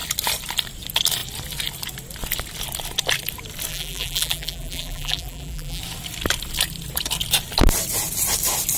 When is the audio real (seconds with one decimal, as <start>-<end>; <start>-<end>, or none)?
0.0-3.7; 5.8-8.8